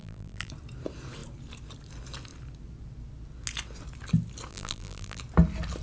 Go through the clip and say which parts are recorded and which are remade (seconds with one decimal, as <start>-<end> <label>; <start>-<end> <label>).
0.0-0.5 remade; 0.5-4.5 recorded; 4.5-5.2 remade; 5.2-5.8 recorded